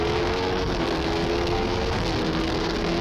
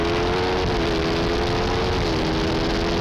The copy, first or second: first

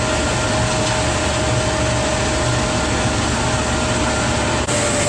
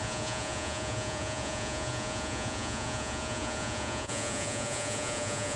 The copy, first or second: second